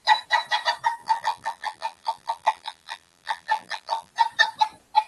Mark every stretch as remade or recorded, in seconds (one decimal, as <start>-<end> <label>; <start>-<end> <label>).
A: 0.0-1.0 recorded; 1.0-4.1 remade; 4.1-5.1 recorded